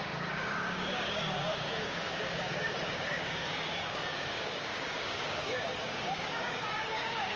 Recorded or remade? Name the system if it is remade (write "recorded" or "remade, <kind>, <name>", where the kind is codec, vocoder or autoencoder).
remade, codec, DAC